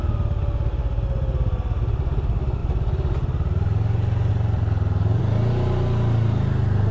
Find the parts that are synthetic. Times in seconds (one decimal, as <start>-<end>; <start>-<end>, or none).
none